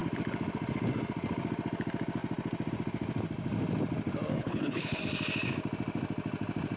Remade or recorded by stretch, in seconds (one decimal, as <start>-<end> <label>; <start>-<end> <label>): 0.0-4.3 recorded; 4.3-5.0 remade; 5.0-6.8 recorded

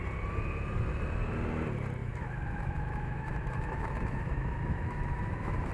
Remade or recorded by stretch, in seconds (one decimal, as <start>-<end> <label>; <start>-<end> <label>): 0.0-2.0 recorded; 2.0-5.7 remade

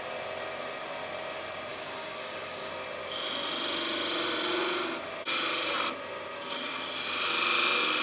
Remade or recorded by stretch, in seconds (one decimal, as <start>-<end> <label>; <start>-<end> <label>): 0.0-1.7 recorded; 1.7-2.7 remade; 2.7-8.0 recorded

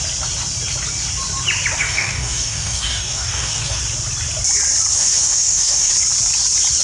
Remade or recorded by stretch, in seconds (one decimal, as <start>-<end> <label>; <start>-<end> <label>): 0.0-1.8 recorded; 1.8-3.8 remade; 3.8-4.9 recorded; 4.9-5.9 remade; 5.9-6.8 recorded

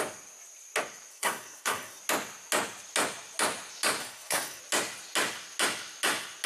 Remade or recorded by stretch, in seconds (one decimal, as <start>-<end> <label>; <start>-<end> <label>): 0.0-1.1 recorded; 1.1-2.0 remade; 2.0-4.0 recorded; 4.0-4.6 remade; 4.6-6.5 recorded

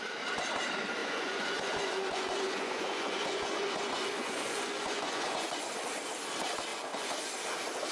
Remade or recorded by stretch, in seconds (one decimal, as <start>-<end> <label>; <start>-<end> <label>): 0.0-1.0 recorded; 1.0-5.7 remade; 5.7-6.7 recorded; 6.7-7.3 remade; 7.3-7.9 recorded

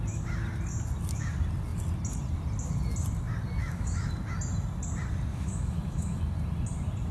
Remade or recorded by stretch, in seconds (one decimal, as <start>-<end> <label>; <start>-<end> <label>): 0.0-3.6 recorded; 3.6-4.1 remade; 4.1-5.3 recorded; 5.3-6.2 remade; 6.2-7.1 recorded

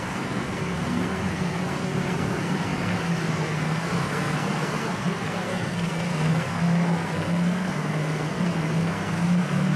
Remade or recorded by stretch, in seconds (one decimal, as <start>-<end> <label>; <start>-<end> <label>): 0.0-9.8 remade